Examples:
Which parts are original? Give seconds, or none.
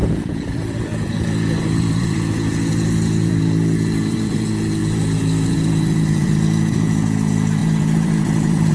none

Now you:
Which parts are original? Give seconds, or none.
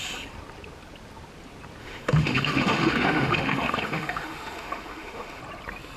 0.0-1.8; 5.4-6.0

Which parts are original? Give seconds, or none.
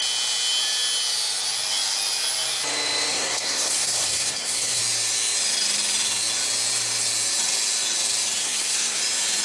0.0-3.1; 4.8-8.4; 9.0-9.4